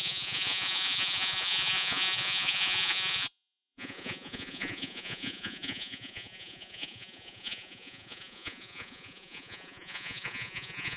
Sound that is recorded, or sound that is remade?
remade